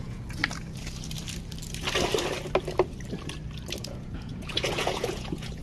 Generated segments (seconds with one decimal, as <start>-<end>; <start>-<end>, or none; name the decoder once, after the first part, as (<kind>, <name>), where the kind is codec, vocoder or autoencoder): 0.0-0.4 (vocoder, Vocos); 3.8-5.6